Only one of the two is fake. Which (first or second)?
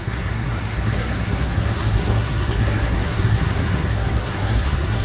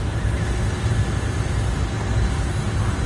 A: first